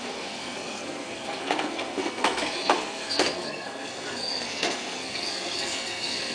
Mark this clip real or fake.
fake